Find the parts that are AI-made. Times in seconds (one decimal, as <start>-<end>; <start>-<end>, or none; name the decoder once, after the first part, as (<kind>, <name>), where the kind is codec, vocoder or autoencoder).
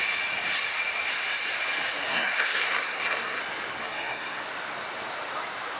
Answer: 2.1-3.4 (codec, SNAC); 3.8-4.4